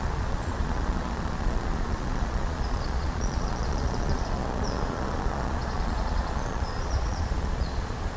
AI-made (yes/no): yes